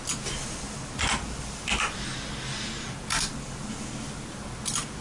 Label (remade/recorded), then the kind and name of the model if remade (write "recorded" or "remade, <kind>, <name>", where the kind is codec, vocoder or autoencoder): recorded